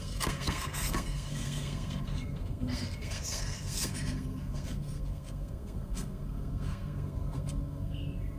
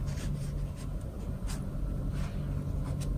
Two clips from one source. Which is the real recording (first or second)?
second